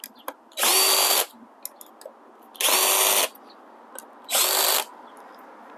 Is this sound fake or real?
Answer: real